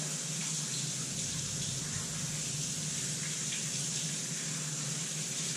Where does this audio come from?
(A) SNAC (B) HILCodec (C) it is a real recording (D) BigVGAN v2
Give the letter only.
C